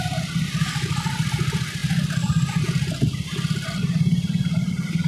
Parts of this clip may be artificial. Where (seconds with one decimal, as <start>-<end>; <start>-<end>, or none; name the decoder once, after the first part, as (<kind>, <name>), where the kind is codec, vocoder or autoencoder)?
none